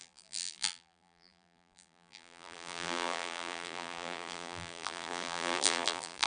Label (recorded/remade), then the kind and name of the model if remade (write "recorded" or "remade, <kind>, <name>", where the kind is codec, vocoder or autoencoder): remade, vocoder, BigVGAN v2